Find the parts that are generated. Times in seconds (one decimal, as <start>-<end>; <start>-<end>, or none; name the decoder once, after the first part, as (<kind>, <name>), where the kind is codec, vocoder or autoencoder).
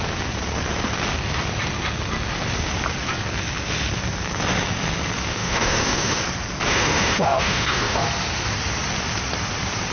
5.3-6.2 (autoencoder, DAC-VAE); 6.7-8.0